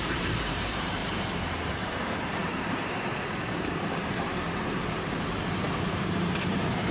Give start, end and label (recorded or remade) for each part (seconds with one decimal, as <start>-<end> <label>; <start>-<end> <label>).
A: 0.0-1.0 remade; 1.0-1.7 recorded; 1.7-6.9 remade